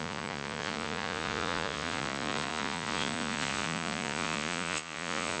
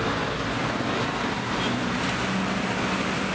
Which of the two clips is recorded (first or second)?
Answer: second